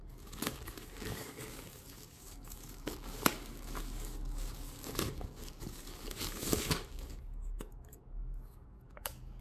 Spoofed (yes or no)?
yes